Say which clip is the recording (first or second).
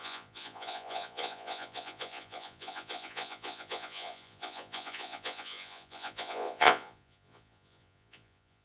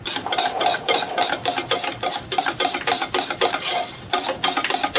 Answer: second